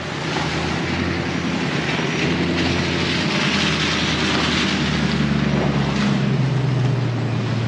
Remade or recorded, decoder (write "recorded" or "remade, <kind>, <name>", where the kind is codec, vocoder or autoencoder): recorded